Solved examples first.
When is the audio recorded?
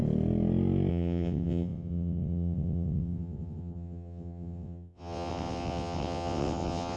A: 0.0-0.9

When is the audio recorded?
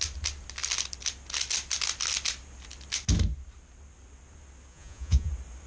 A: 0.0-4.7; 5.3-5.7